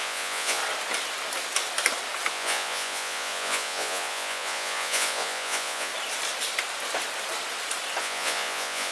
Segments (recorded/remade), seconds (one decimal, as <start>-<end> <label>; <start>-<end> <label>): 0.0-0.6 remade; 0.6-2.3 recorded; 2.3-5.9 remade; 5.9-8.0 recorded; 8.0-8.9 remade